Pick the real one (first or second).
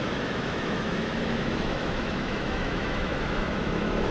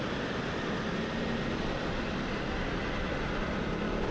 second